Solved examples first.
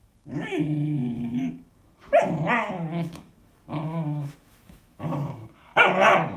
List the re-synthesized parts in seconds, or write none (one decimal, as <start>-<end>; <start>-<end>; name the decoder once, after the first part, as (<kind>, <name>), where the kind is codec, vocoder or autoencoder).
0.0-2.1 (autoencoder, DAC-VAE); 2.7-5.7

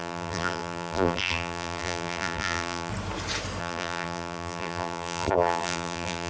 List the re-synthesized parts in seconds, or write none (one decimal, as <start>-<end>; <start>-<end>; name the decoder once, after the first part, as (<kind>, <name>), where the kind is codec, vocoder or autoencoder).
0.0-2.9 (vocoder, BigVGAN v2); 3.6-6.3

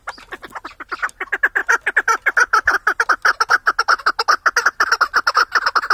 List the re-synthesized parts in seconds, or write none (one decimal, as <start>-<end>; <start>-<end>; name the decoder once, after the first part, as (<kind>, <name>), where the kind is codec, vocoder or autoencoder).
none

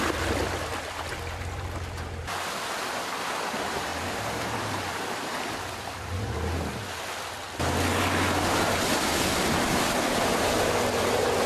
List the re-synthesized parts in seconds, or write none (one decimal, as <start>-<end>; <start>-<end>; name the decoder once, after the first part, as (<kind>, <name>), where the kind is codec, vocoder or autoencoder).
none

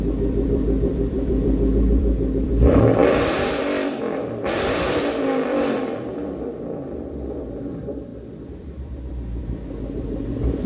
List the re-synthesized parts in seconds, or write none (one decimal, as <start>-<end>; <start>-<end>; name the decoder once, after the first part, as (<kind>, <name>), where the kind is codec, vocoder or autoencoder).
0.0-8.1 (vocoder, BigVGAN v2); 8.6-9.4; 10.0-10.7